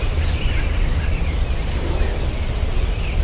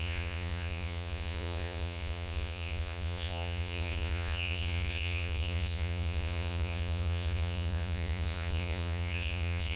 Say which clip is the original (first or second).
first